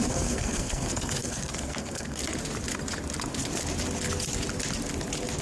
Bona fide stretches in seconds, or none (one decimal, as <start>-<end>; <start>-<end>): 2.2-5.4

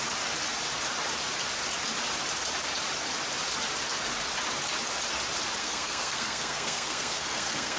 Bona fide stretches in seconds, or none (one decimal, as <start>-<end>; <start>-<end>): 0.0-5.6

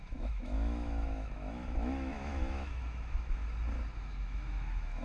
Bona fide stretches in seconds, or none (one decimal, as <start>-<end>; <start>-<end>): 3.4-4.2